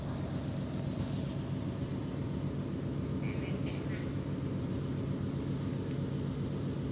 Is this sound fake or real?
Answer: real